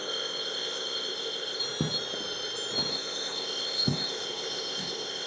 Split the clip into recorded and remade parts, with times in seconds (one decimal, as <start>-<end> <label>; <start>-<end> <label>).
0.0-1.6 remade; 1.6-2.9 recorded; 2.9-5.3 remade